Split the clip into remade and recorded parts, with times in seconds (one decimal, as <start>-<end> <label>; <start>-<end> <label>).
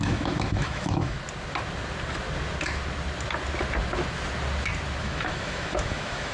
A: 0.0-1.2 remade; 1.2-5.0 recorded; 5.0-6.3 remade